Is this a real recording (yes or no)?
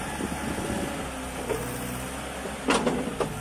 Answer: yes